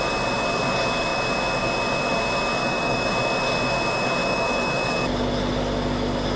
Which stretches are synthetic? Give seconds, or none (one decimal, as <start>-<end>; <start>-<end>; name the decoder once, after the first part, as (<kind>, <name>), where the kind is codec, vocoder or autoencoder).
2.6-3.1 (autoencoder, DAC-VAE); 4.2-5.1